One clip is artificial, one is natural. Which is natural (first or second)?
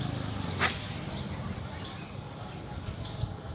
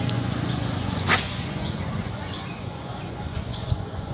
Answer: first